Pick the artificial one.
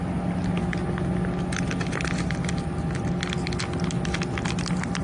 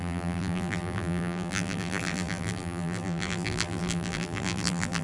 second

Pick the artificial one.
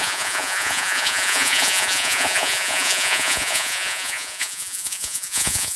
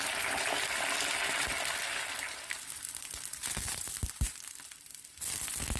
first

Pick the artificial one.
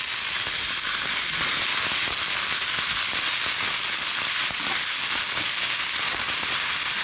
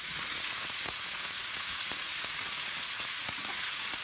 second